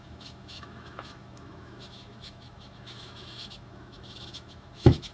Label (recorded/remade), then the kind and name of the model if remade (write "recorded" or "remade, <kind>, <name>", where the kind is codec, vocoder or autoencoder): remade, autoencoder, DAC-VAE